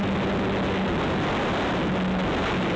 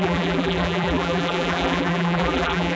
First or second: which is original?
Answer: first